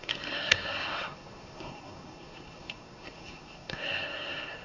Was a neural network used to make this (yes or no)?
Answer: yes